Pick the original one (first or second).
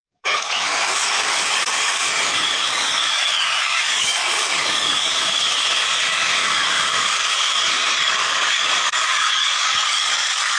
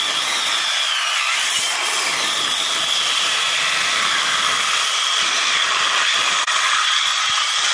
second